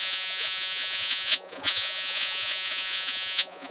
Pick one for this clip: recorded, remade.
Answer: remade